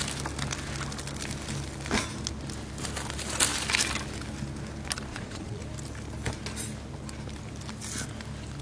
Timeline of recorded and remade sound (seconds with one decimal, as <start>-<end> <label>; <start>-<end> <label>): 0.0-5.1 recorded; 5.1-5.6 remade; 5.6-8.6 recorded